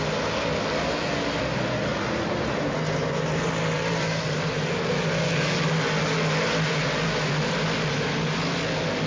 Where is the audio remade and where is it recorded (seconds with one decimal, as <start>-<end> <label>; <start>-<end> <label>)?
0.0-1.9 recorded; 1.9-4.7 remade; 4.7-9.1 recorded